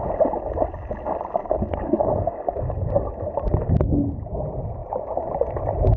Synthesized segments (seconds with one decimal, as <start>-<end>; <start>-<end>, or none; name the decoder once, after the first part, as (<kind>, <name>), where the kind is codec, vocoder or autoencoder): none